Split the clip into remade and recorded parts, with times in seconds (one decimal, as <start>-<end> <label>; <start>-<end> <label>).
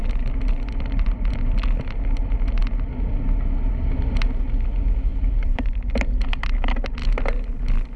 0.0-5.1 recorded; 5.1-5.9 remade; 5.9-8.0 recorded